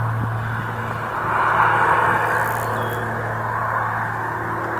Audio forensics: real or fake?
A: real